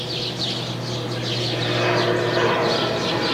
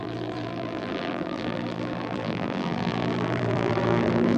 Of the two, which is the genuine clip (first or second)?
first